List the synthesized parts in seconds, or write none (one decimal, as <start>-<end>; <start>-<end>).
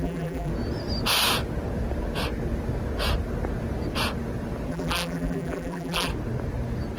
0.0-0.5; 4.7-6.1